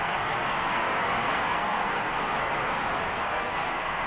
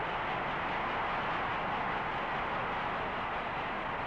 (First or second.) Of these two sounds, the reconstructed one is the first